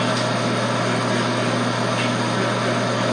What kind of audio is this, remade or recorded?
recorded